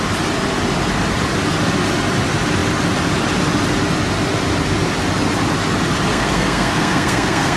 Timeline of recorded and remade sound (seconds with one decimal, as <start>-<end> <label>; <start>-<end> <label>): 0.0-6.1 recorded; 6.1-7.6 remade

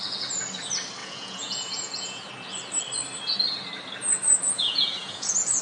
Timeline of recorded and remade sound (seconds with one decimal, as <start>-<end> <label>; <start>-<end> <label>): 0.0-1.0 recorded; 1.0-2.3 remade; 2.3-4.4 recorded; 4.4-5.6 remade